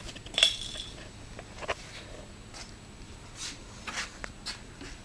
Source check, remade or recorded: recorded